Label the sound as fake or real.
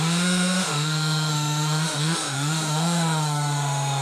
fake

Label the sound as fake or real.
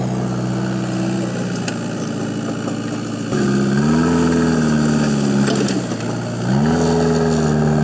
real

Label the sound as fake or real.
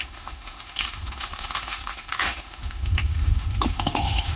fake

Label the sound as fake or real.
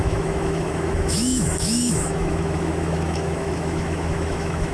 fake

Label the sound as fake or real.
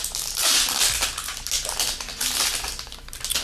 real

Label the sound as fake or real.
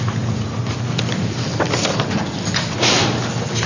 real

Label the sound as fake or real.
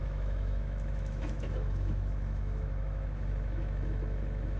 fake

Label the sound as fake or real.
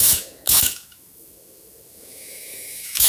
fake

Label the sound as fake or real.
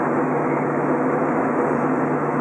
fake